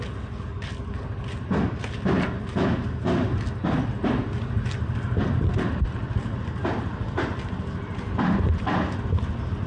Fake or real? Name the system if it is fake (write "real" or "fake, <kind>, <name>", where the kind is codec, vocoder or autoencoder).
real